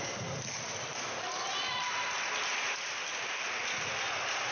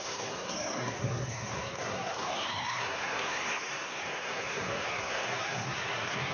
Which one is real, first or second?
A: first